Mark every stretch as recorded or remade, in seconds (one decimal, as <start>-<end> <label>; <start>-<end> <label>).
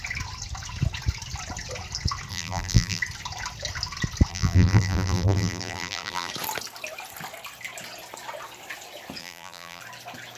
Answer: 0.0-2.3 recorded; 2.3-3.0 remade; 3.0-4.3 recorded; 4.3-6.3 remade; 6.3-9.2 recorded; 9.2-9.8 remade; 9.8-10.4 recorded